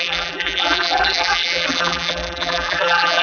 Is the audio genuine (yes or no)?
no